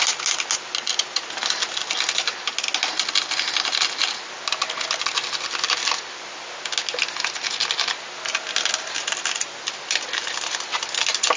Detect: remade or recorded recorded